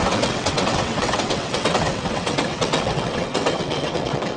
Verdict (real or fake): fake